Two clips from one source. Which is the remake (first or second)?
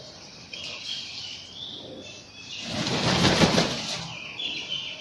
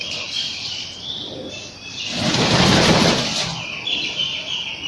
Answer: second